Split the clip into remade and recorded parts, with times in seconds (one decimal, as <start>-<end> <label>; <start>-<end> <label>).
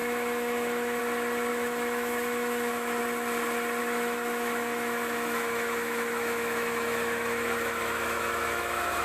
0.0-1.0 remade; 1.0-1.5 recorded; 1.5-3.0 remade; 3.0-3.8 recorded; 3.8-9.0 remade